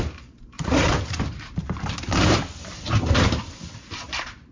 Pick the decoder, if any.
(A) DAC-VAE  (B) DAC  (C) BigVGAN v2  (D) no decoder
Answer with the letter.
C